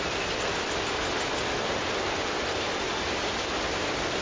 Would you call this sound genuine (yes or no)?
yes